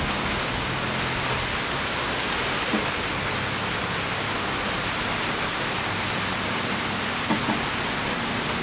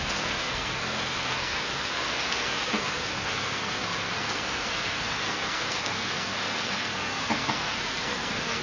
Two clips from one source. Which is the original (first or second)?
first